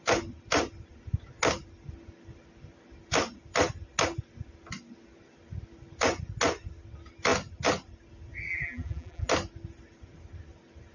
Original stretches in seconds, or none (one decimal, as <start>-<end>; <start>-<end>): 0.0-8.5; 9.3-10.9